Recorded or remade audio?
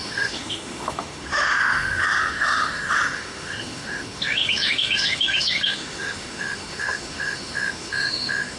remade